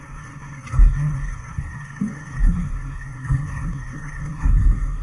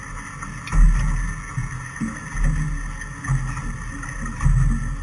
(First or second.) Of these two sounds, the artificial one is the first